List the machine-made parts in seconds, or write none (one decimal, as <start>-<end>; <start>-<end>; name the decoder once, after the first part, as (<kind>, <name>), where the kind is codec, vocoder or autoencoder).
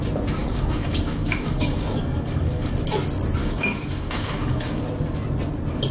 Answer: 0.4-2.7 (codec, DAC); 3.4-4.8